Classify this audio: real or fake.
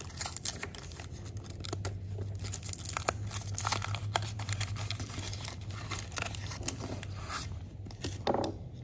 real